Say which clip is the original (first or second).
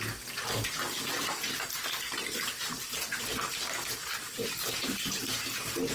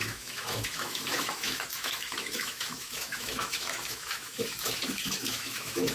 first